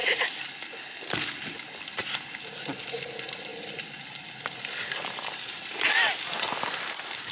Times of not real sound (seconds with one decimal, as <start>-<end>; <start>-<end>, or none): 0.0-0.8; 2.0-2.8; 3.5-5.9

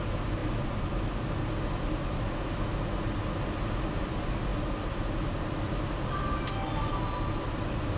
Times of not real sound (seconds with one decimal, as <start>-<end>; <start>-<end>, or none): none

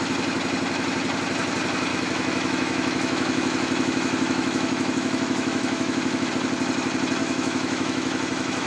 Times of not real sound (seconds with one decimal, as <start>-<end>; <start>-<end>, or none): 1.9-6.3; 7.2-8.7

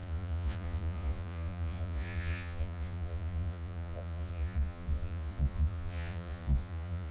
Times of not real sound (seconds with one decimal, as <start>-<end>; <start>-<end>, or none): 0.0-7.1

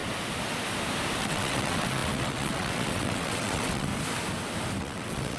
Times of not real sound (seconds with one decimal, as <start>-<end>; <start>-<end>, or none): 1.2-3.9; 4.8-5.4

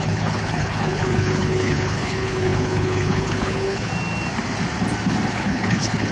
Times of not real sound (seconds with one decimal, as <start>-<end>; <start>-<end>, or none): 0.0-3.9; 5.3-6.1

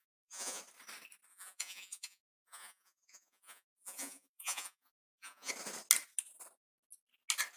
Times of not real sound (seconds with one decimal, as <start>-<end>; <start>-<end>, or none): 0.0-0.6; 1.3-5.5

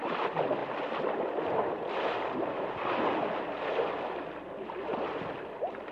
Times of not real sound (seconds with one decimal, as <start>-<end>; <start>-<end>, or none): none